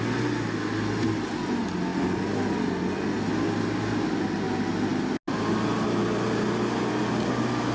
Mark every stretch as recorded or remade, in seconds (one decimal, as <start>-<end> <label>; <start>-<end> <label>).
0.0-7.7 recorded